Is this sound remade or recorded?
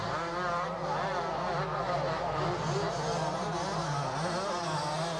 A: recorded